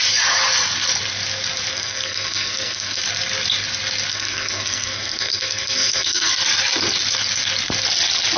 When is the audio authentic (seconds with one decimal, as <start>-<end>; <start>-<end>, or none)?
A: 0.0-1.7; 3.0-4.1; 6.3-8.4